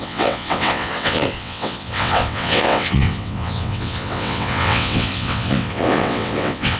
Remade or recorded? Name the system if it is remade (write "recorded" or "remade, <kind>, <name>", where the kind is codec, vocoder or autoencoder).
remade, vocoder, WaveNeXt